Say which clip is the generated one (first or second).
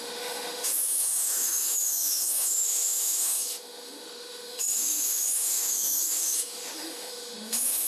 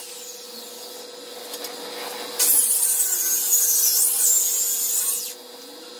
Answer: first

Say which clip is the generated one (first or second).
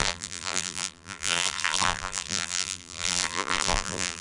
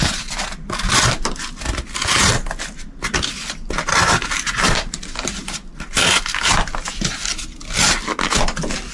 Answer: first